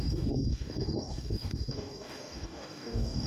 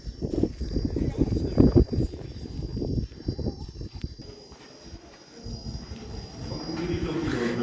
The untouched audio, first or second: second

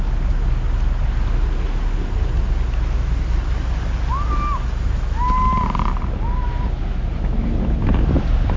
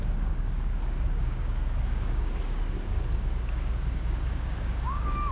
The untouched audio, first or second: first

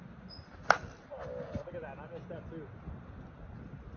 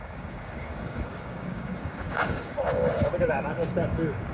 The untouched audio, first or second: first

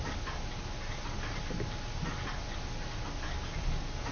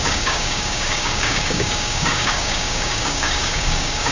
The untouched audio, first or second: first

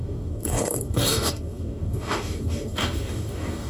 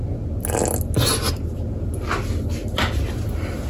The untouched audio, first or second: second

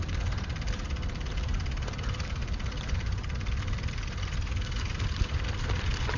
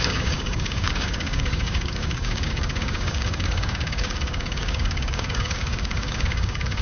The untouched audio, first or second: first